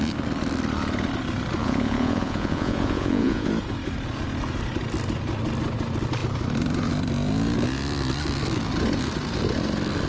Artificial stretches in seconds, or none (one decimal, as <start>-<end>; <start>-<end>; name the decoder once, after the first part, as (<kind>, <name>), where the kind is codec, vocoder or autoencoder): 1.6-3.5 (vocoder, Vocos)